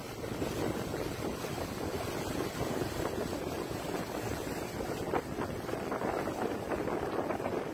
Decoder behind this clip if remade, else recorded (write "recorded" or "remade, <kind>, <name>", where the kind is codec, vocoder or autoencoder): recorded